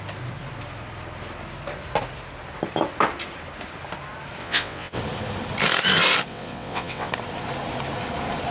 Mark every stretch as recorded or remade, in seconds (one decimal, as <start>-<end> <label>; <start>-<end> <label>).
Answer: 0.0-4.4 recorded; 4.4-5.0 remade; 5.0-6.3 recorded; 6.3-7.1 remade; 7.1-8.5 recorded